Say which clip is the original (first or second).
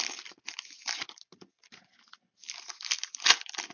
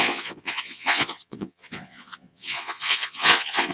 first